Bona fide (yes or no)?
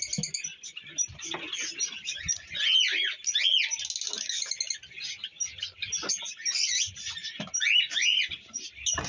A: yes